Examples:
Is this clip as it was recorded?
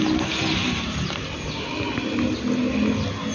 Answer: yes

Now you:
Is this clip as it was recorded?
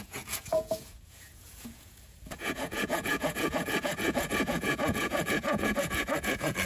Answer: no